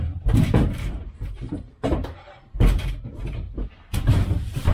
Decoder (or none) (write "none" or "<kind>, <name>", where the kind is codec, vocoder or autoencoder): vocoder, BigVGAN v2